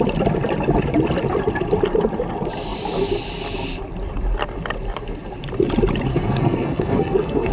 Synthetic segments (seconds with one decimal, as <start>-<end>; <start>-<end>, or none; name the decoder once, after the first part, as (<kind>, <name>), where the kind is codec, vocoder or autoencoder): 6.1-7.5 (codec, SNAC)